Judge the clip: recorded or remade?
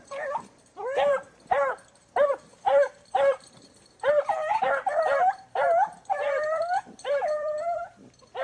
remade